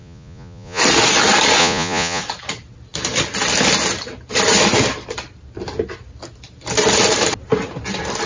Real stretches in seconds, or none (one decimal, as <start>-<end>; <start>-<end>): 0.8-1.6; 2.2-8.3